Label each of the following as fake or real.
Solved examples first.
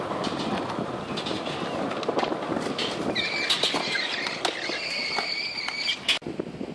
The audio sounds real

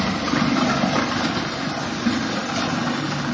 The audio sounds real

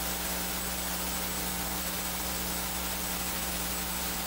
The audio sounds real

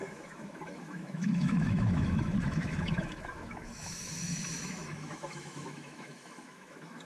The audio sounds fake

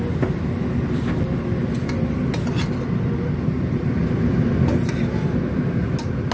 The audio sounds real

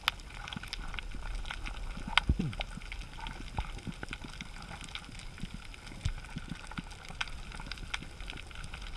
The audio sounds real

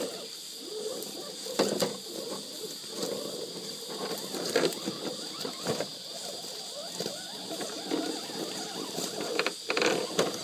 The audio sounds real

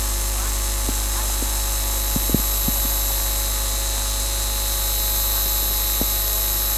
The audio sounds real